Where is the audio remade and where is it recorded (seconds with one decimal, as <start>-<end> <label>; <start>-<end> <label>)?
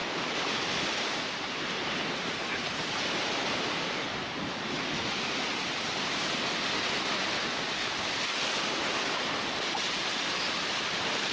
0.0-4.4 remade; 4.4-11.3 recorded